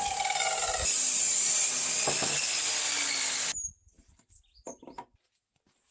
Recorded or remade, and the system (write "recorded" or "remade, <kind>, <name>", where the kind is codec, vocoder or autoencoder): recorded